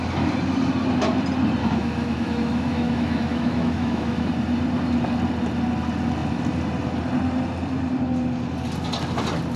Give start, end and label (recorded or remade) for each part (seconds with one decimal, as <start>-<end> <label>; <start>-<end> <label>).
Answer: 0.0-1.6 recorded; 1.6-4.3 remade; 4.3-9.6 recorded